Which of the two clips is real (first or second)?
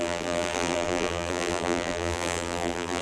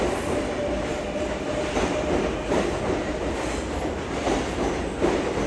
second